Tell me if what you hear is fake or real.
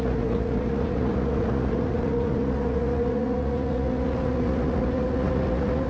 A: fake